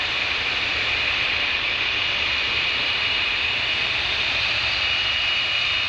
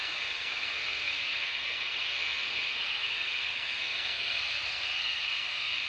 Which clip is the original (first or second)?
first